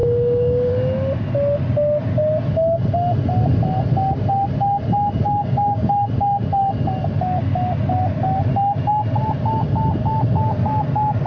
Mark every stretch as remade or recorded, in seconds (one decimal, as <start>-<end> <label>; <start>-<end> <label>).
0.0-0.7 remade; 0.7-5.2 recorded; 5.2-5.9 remade; 5.9-11.3 recorded